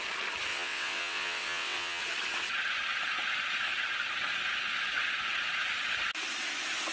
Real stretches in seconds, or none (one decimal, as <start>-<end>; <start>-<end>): 0.0-0.5; 2.0-6.9